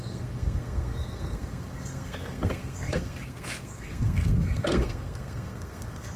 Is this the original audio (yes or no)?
no